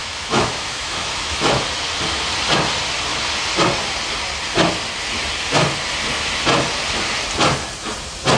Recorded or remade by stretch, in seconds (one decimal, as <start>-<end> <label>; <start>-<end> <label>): 0.0-1.6 remade; 1.6-8.4 recorded